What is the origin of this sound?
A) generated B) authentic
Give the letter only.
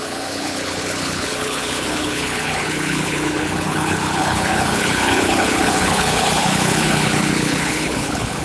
A